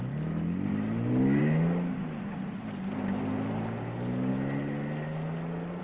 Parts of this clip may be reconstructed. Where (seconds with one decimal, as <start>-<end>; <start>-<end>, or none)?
none